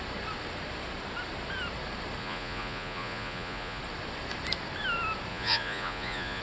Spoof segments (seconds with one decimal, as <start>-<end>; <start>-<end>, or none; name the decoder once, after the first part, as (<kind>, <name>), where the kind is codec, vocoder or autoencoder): 2.2-3.8 (vocoder, Vocos); 5.3-6.4